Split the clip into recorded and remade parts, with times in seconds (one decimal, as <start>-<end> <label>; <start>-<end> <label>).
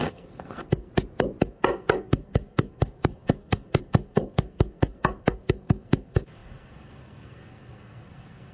0.0-0.9 remade; 0.9-1.4 recorded; 1.4-8.5 remade